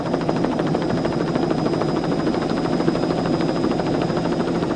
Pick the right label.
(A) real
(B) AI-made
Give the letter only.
A